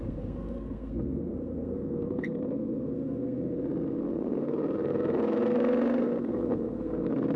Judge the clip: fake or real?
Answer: fake